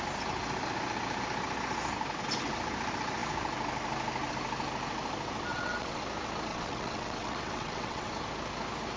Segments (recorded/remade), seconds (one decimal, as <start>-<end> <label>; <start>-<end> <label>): 0.0-5.5 recorded; 5.5-6.0 remade; 6.0-6.5 recorded; 6.5-8.1 remade; 8.1-9.0 recorded